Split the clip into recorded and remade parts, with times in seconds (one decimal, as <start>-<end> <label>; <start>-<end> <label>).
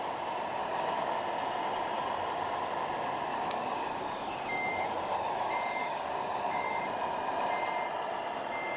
0.0-0.6 recorded; 0.6-1.1 remade; 1.1-3.3 recorded; 3.3-6.8 remade; 6.8-8.8 recorded